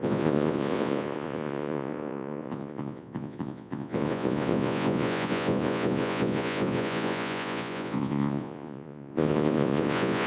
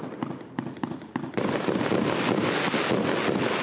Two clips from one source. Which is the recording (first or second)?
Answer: second